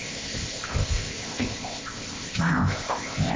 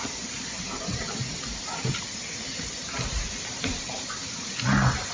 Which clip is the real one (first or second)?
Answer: second